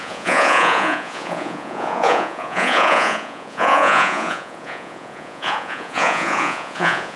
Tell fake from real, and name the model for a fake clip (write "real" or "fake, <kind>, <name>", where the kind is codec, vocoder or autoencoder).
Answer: fake, vocoder, Vocos